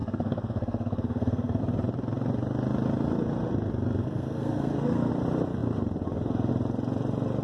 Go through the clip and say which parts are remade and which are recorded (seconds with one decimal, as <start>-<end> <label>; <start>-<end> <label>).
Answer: 0.0-1.6 remade; 1.6-4.0 recorded; 4.0-5.1 remade; 5.1-7.4 recorded